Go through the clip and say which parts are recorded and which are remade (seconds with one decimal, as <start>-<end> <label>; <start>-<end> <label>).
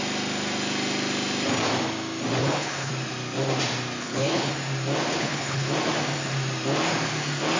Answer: 0.0-2.4 recorded; 2.4-2.9 remade; 2.9-4.0 recorded; 4.0-4.5 remade; 4.5-5.1 recorded; 5.1-5.7 remade; 5.7-7.6 recorded